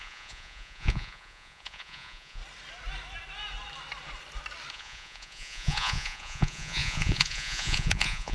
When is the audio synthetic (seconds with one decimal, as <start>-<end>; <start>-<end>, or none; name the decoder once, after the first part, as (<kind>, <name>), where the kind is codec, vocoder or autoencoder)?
0.0-2.4 (vocoder, Vocos); 4.7-8.3